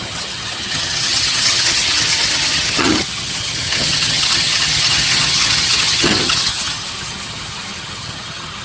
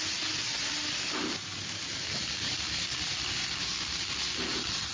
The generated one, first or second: first